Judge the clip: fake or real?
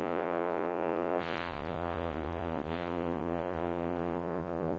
fake